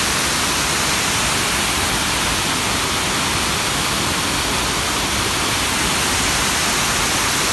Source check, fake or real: real